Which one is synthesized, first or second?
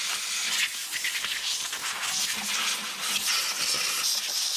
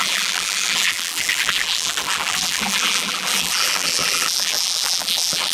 second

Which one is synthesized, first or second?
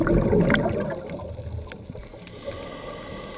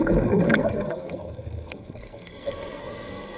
second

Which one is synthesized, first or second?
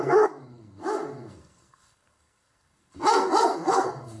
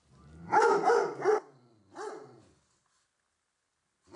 first